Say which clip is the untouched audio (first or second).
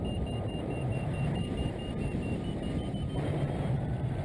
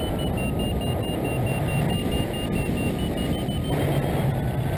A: second